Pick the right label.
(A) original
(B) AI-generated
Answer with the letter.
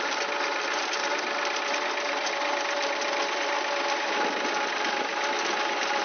B